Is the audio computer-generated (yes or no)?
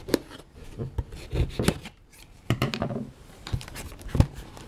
yes